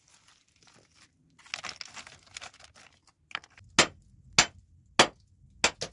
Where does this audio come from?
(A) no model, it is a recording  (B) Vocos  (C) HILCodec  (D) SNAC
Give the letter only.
A